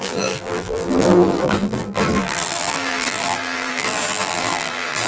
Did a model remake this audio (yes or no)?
yes